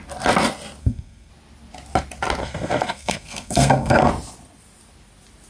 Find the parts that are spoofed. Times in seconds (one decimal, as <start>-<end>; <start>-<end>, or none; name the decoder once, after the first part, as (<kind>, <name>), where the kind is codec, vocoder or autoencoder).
0.8-1.3 (codec, SNAC); 2.4-4.1